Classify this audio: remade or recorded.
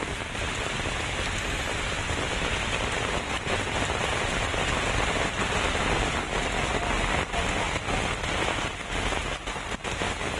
recorded